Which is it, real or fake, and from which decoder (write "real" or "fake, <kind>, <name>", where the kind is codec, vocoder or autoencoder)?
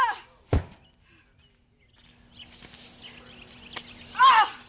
real